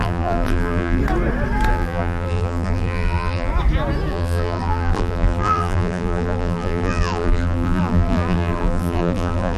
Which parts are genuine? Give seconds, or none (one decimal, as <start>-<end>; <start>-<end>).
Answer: 1.0-1.7; 3.5-4.1